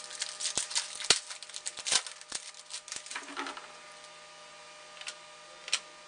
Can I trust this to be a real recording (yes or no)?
yes